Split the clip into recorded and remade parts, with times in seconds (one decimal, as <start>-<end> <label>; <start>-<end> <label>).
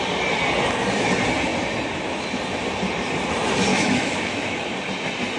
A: 0.0-3.7 recorded; 3.7-4.6 remade; 4.6-5.4 recorded